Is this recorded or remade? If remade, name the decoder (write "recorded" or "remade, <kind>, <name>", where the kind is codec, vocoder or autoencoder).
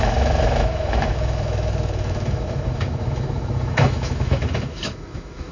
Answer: remade, autoencoder, DAC-VAE